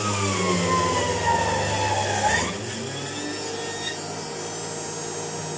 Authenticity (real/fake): real